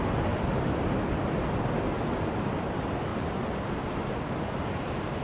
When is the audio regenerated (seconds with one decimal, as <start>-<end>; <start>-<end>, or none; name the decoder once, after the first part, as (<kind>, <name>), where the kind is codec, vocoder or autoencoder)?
3.1-3.7 (vocoder, BigVGAN v2)